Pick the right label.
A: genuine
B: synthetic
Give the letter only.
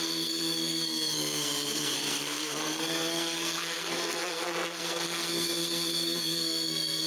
B